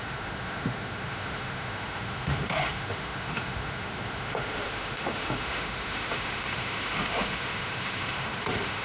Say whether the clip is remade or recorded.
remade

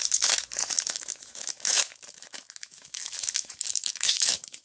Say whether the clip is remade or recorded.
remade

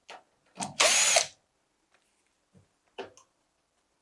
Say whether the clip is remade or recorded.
recorded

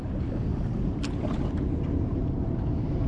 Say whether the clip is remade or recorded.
recorded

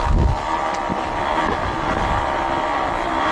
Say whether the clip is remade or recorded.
recorded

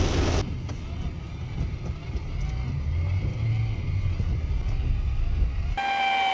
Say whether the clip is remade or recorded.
recorded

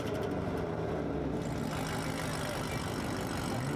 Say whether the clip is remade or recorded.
recorded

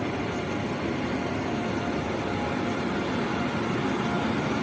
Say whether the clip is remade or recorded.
recorded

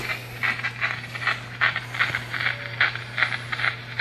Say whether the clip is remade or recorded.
recorded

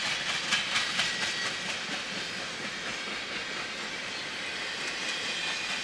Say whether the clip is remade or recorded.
recorded